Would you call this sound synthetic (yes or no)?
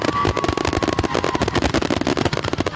no